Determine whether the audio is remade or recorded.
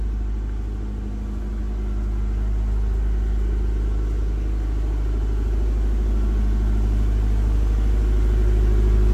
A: recorded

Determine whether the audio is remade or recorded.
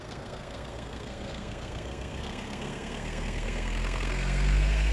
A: remade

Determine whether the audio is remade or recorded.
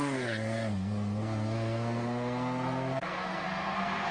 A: remade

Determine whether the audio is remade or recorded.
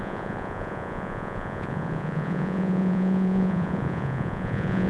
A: remade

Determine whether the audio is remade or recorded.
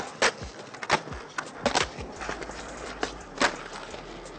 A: recorded